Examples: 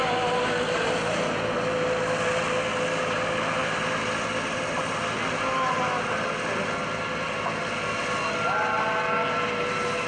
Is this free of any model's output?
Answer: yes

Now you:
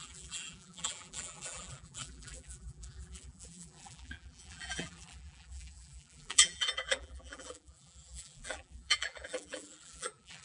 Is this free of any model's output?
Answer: no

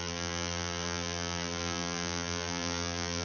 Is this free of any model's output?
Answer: no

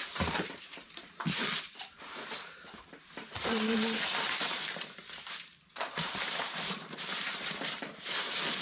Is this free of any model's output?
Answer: no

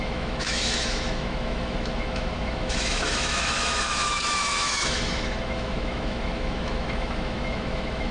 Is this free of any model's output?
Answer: no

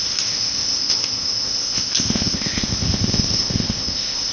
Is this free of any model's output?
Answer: no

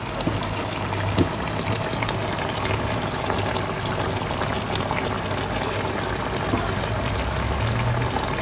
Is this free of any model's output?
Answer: yes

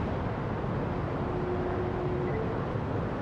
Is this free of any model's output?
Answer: yes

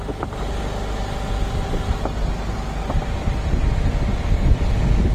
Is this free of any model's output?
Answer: yes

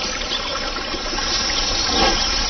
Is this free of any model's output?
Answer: yes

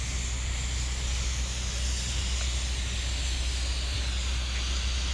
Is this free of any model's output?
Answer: yes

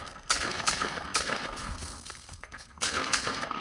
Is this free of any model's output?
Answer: no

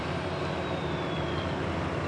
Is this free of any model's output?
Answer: yes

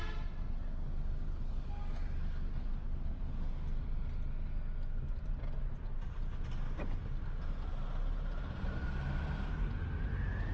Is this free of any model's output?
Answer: yes